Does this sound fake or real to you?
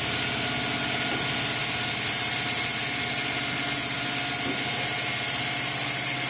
real